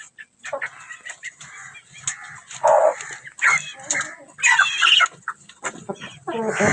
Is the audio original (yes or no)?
yes